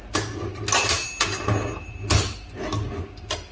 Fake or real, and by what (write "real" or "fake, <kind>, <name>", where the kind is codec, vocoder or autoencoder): real